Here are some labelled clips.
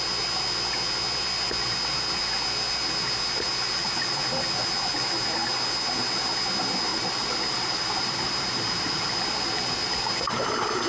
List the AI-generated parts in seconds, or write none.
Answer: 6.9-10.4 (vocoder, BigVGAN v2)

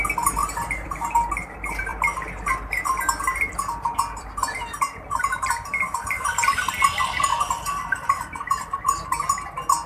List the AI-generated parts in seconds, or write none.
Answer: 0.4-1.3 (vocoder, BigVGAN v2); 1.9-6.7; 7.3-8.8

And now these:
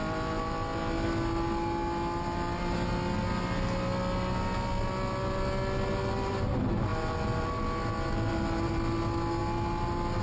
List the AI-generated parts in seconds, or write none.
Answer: none

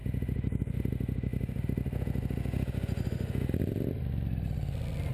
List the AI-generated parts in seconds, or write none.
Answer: none